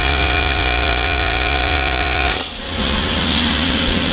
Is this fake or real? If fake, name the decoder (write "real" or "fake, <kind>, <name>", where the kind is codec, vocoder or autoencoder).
fake, vocoder, Vocos